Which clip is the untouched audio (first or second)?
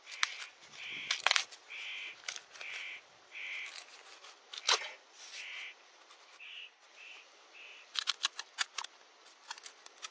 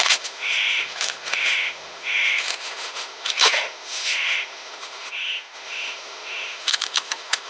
first